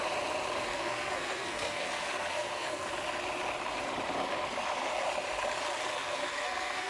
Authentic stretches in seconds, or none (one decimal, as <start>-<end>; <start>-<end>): 0.0-0.7; 2.9-5.9